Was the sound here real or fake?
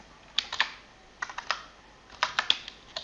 real